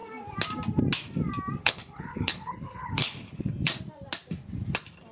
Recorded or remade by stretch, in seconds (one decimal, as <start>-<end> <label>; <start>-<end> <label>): 0.0-1.6 recorded; 1.6-3.4 remade; 3.4-5.1 recorded